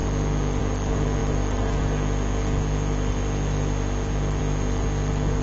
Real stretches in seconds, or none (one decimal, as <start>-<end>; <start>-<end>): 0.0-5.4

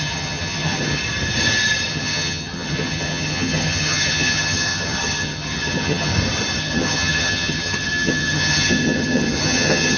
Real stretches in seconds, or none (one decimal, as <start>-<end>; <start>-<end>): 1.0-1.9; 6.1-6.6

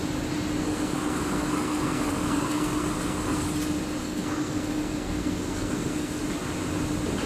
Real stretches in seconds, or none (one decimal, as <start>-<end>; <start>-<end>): 0.0-0.6; 3.5-4.0; 6.2-7.3

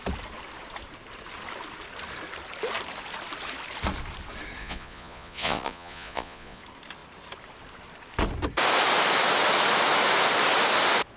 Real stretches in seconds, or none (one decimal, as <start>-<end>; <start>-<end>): 0.0-4.6; 6.6-11.2

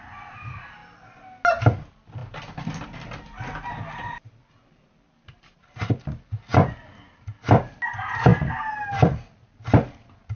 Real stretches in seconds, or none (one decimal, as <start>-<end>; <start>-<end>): 0.0-10.4

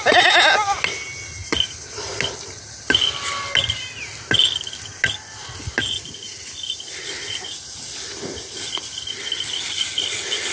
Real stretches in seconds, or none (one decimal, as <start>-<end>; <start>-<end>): 0.0-10.5